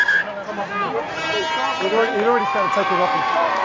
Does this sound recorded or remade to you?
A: recorded